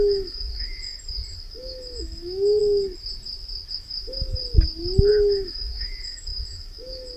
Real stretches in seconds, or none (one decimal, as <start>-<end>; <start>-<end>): 0.9-1.5; 2.6-3.7; 4.4-5.1